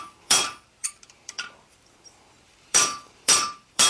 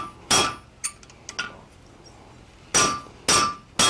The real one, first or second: second